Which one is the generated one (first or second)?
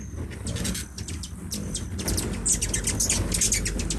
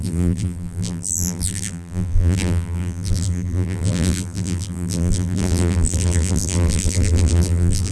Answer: second